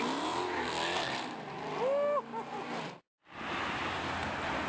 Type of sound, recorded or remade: recorded